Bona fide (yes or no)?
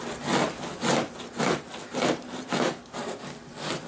yes